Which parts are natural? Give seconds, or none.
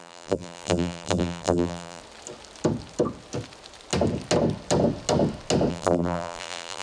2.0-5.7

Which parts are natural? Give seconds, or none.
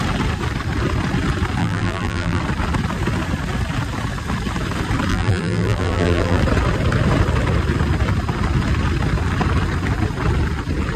0.0-1.6; 2.4-5.1; 6.4-11.0